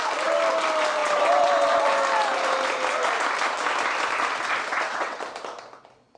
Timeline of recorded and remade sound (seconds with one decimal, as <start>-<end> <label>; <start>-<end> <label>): 0.0-4.7 recorded; 4.7-5.2 remade; 5.2-6.2 recorded